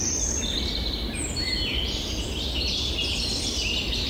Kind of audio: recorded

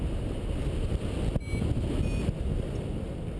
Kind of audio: recorded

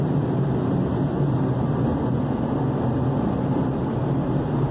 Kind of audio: recorded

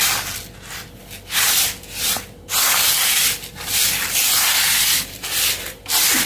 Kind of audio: recorded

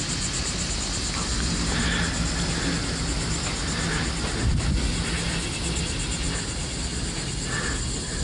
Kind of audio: recorded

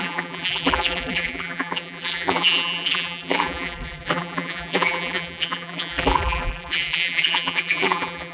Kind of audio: remade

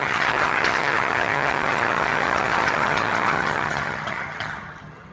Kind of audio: remade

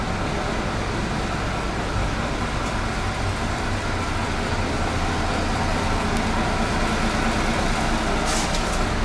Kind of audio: recorded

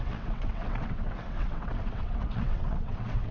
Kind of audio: remade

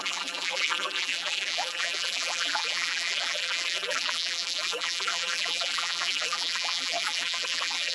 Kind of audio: remade